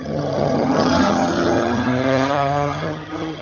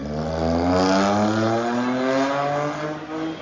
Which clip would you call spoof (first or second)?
first